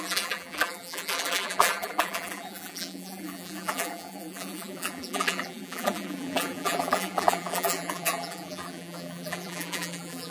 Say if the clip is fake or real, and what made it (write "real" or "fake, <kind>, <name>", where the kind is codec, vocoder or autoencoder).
fake, vocoder, BigVGAN v2